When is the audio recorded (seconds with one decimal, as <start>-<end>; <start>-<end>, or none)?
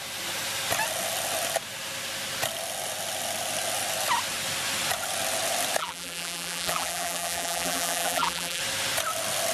0.0-5.8; 8.6-9.5